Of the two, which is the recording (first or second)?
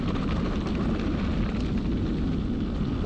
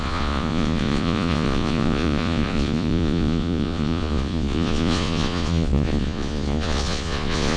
first